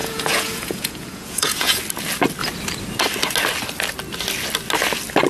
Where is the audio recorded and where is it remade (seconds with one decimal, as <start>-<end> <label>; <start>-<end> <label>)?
0.0-1.8 remade; 1.8-5.3 recorded